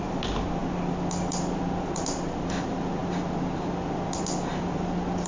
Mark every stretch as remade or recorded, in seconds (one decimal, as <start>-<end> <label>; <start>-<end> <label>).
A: 0.0-5.3 recorded